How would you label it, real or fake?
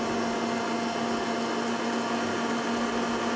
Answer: real